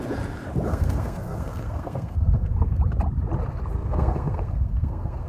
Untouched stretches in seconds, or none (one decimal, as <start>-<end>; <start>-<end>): 0.0-0.7; 2.8-3.8